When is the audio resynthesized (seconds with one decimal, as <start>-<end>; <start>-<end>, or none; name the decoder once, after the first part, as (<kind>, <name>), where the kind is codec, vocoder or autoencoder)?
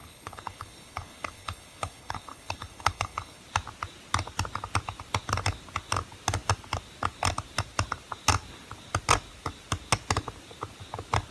0.0-3.4 (codec, HILCodec)